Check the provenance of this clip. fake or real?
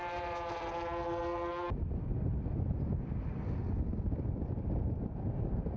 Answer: real